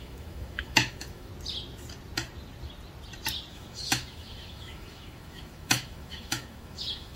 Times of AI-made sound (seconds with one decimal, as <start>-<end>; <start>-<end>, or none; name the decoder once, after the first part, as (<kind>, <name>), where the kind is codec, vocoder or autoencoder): 0.0-1.3 (autoencoder, DAC-VAE); 3.5-7.2